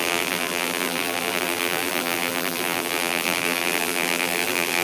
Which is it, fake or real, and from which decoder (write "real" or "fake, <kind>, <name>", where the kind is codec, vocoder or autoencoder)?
fake, vocoder, BigVGAN v2